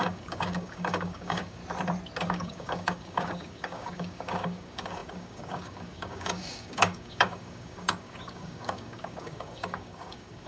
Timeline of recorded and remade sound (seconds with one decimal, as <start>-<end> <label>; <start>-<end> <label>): 0.0-1.6 remade; 1.6-2.2 recorded; 2.2-10.5 remade